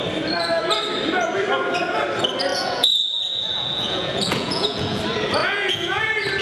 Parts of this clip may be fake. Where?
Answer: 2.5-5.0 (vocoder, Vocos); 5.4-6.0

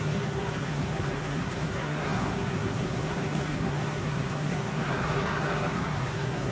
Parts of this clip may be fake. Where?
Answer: 0.0-6.5 (codec, SNAC)

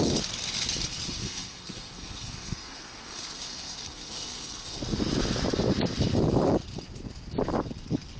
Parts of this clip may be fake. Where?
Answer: 1.2-4.8 (codec, SNAC)

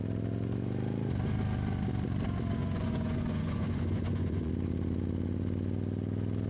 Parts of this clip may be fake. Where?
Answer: 2.6-4.5 (vocoder, Vocos)

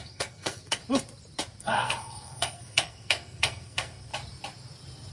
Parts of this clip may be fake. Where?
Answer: 0.0-0.8 (codec, SNAC); 1.6-4.1

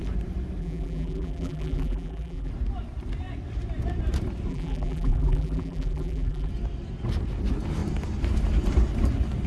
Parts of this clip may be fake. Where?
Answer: 0.6-2.5 (vocoder, BigVGAN v2); 4.5-6.5

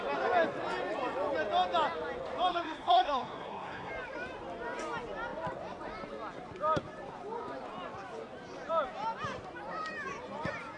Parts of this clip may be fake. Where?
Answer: 2.5-3.9 (codec, SNAC)